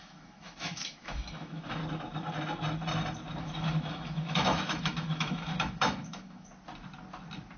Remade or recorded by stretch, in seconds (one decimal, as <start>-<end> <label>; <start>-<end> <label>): 0.0-1.8 remade; 1.8-3.4 recorded; 3.4-6.5 remade; 6.5-7.6 recorded